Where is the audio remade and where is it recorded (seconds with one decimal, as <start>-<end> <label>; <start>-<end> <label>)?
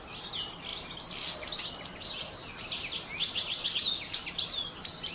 0.0-0.7 remade; 0.7-3.7 recorded; 3.7-5.1 remade